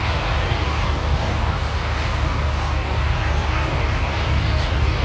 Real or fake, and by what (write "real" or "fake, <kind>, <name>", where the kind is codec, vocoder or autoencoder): fake, codec, DAC